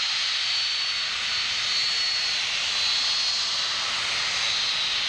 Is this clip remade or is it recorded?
recorded